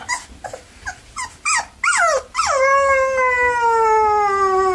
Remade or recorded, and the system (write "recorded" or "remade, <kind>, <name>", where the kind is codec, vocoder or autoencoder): recorded